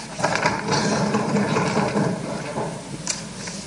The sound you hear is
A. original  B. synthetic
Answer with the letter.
A